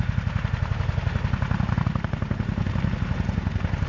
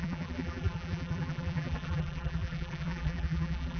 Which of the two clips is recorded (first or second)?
first